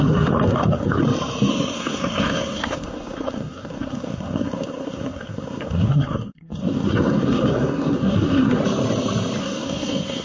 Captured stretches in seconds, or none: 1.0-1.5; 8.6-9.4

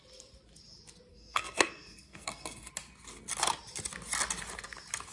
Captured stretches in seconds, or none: 0.0-1.1; 2.7-5.1

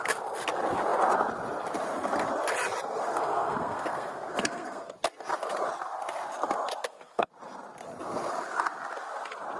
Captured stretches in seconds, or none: 0.0-3.1; 4.9-6.8; 7.3-9.6

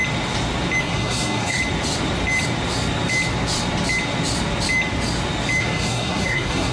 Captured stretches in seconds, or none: 0.0-0.8; 1.6-5.6

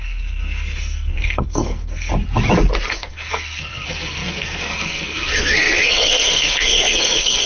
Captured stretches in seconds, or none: 2.1-2.9

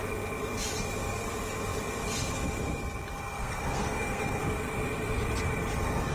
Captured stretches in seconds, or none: 0.0-3.4; 4.4-6.1

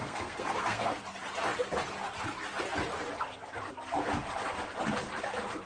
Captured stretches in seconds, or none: 1.0-5.7

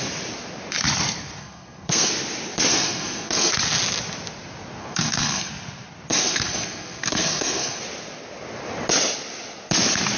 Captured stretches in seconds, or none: 0.0-1.4; 2.1-2.7; 3.5-4.8; 5.5-6.1; 7.8-10.2